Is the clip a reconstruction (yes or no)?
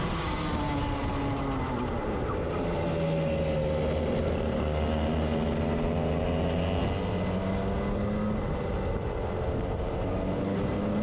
no